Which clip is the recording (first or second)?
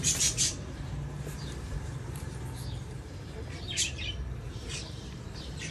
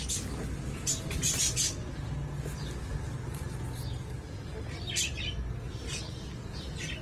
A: second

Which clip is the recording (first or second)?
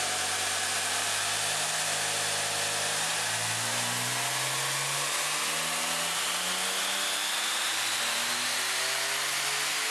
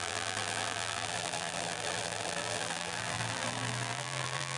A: first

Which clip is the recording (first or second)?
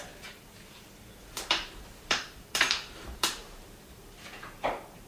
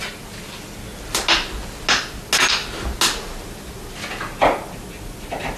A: second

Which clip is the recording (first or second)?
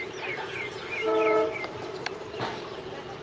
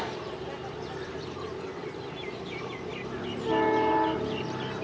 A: second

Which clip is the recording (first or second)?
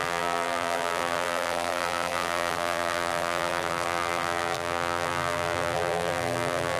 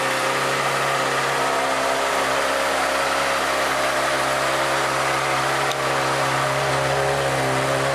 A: second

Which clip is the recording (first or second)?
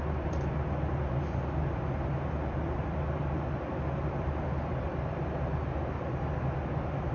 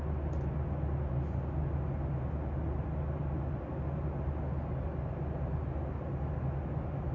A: second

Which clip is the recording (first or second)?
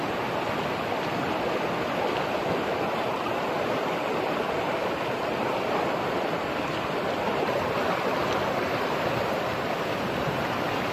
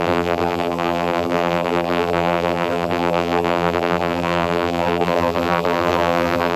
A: first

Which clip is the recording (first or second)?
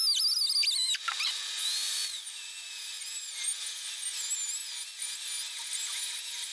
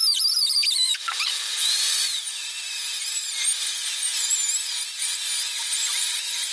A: first